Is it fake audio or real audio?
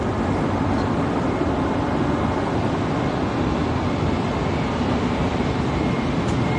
real